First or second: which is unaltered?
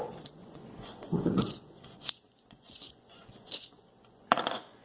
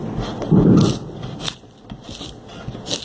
second